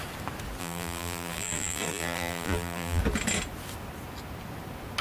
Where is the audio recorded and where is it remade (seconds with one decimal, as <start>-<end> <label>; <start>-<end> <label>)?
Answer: 0.0-0.6 recorded; 0.6-3.0 remade; 3.0-5.0 recorded